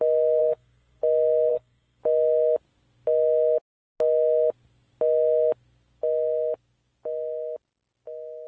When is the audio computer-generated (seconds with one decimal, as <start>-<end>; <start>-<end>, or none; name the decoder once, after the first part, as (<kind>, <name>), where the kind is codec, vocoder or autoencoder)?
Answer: 0.4-1.0 (codec, SNAC); 1.5-2.0